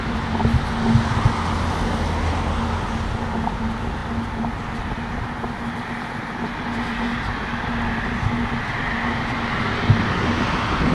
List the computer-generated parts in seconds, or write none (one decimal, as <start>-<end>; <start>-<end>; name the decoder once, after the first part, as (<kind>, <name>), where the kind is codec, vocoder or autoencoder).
none